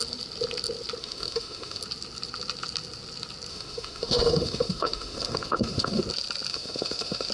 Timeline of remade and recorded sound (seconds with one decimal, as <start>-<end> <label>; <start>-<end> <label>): 0.0-1.0 recorded; 1.0-1.8 remade; 1.8-3.5 recorded; 3.5-6.0 remade; 6.0-6.5 recorded; 6.5-7.3 remade